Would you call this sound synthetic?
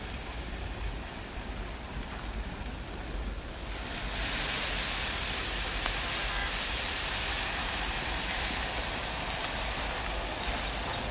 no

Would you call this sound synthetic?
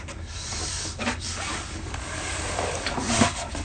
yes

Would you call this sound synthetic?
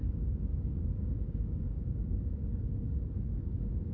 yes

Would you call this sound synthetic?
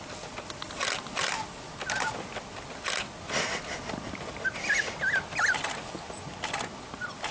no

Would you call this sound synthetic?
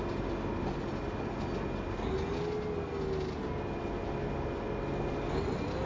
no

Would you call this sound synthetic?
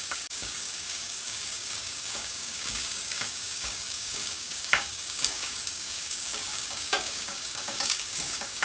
yes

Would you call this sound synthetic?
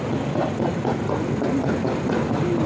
no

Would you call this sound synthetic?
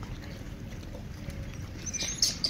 no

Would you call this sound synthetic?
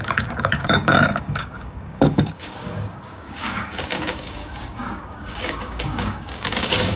yes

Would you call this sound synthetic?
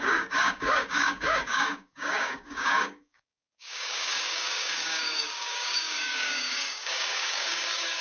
yes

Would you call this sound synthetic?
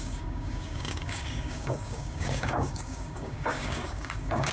yes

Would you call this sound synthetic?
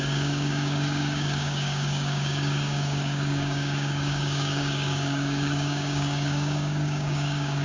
yes